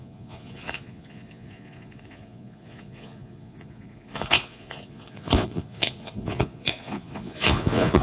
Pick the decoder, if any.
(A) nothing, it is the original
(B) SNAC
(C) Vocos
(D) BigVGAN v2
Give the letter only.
C